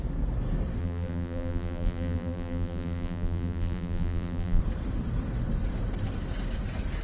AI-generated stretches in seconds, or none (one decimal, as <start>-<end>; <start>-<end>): 0.8-4.6